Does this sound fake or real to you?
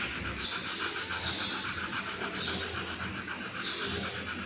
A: real